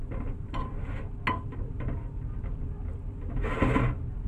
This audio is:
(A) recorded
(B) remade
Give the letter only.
A